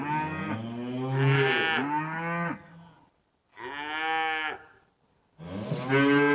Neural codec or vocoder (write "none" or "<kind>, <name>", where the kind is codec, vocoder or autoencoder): none